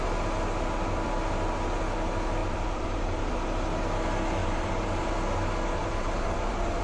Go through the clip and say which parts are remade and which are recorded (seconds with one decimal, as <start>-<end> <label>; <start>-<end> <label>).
0.0-2.4 recorded; 2.4-3.3 remade; 3.3-4.4 recorded; 4.4-5.0 remade; 5.0-5.8 recorded; 5.8-6.8 remade